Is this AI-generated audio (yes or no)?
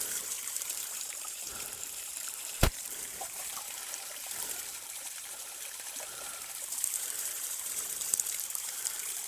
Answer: yes